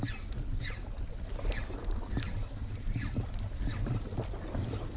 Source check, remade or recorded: recorded